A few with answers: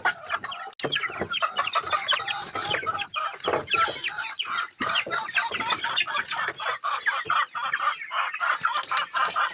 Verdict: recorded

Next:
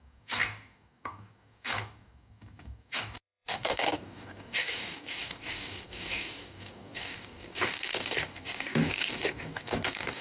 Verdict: remade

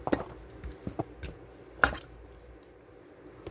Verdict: recorded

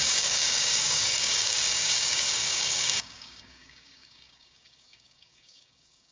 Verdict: remade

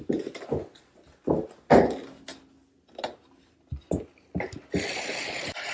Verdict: recorded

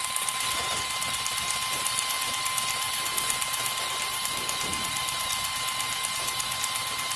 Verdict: recorded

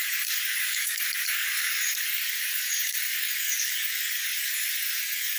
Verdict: remade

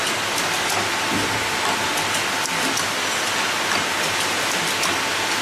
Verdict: recorded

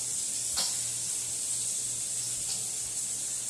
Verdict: recorded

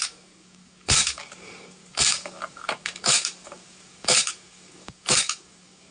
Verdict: remade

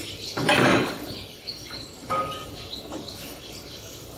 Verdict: remade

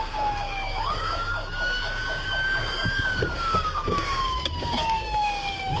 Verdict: remade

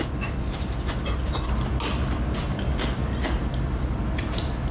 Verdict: recorded